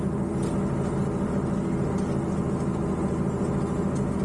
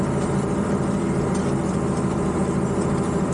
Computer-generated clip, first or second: second